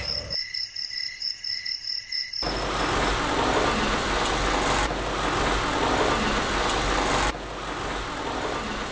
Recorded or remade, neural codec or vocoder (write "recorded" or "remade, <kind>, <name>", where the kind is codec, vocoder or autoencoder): recorded